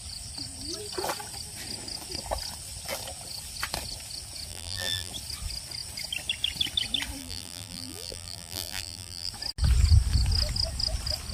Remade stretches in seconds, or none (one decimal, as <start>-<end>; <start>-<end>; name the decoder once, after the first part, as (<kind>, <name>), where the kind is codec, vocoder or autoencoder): 4.5-5.1 (vocoder, BigVGAN v2); 7.2-9.3